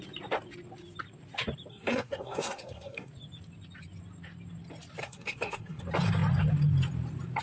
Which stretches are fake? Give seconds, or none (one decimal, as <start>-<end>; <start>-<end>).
1.7-3.1; 5.0-5.8